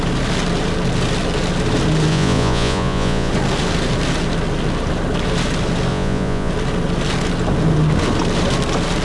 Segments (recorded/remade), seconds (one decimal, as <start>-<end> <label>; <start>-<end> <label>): 0.0-2.1 recorded; 2.1-3.3 remade; 3.3-5.9 recorded; 5.9-6.5 remade; 6.5-9.0 recorded